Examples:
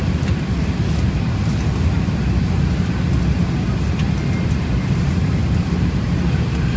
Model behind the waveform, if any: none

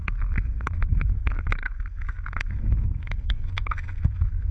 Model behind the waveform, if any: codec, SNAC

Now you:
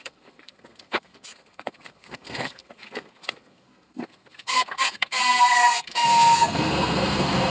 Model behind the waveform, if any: codec, SNAC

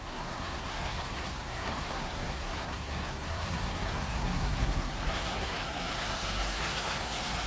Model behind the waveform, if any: codec, SNAC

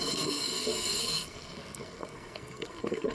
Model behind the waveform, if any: codec, SNAC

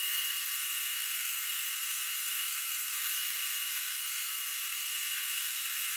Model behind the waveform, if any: codec, SNAC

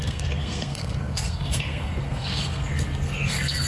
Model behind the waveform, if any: codec, SNAC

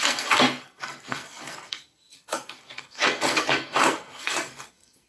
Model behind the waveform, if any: codec, SNAC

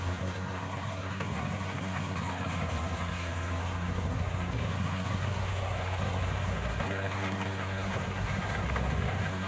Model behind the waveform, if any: codec, SNAC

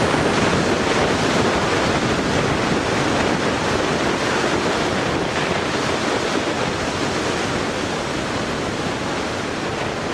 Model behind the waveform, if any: none